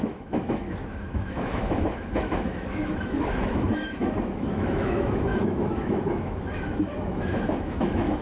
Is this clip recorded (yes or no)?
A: no